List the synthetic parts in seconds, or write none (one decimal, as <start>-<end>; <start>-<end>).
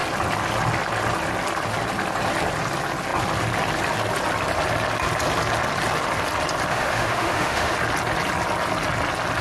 6.7-7.7